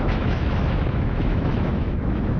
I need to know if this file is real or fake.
fake